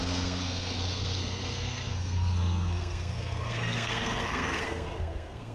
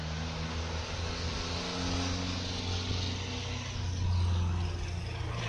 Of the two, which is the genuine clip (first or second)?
second